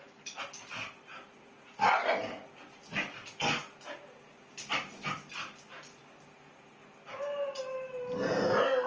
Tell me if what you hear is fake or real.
real